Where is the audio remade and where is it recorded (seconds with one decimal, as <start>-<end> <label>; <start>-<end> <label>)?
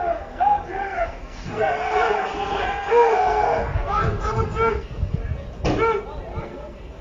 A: 0.0-5.2 remade; 5.2-6.4 recorded; 6.4-7.0 remade